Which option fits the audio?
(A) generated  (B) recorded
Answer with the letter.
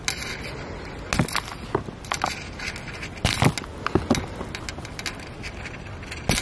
B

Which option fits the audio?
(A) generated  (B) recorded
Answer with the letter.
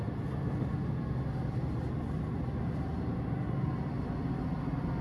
B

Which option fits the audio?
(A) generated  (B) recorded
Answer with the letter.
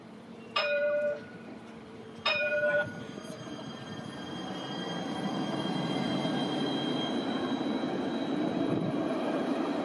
A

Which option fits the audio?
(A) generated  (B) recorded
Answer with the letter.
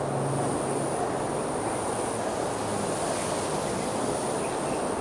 B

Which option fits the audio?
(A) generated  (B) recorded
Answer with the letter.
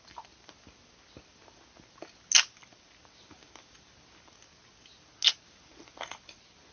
B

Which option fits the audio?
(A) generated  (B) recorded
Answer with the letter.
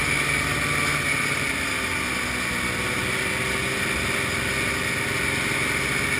B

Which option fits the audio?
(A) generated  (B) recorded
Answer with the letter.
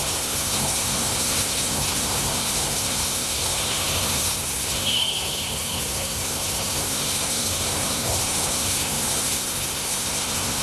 A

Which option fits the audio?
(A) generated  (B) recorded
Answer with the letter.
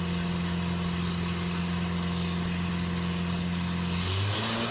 B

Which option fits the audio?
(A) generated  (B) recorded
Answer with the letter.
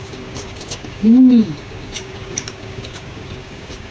A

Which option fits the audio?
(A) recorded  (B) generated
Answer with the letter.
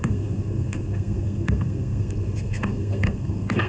B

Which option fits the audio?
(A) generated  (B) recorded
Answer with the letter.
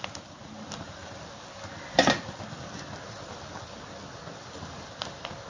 B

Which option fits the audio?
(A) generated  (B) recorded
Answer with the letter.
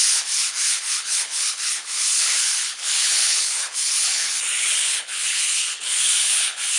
A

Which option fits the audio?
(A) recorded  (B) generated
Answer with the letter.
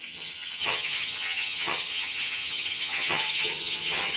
B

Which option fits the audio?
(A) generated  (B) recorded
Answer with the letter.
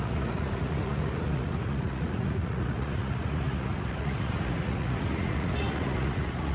A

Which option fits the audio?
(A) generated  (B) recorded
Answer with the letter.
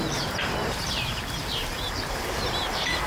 A